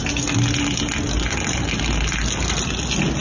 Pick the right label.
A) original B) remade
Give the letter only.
A